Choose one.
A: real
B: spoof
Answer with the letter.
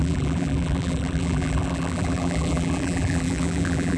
B